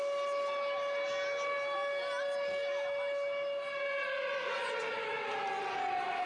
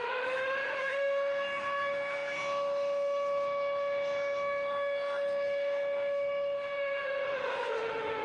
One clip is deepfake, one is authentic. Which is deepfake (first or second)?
second